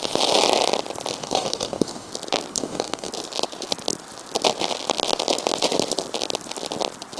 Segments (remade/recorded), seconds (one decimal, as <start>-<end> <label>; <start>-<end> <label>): 0.0-1.2 recorded; 1.2-2.1 remade; 2.1-2.5 recorded; 2.5-3.1 remade; 3.1-7.2 recorded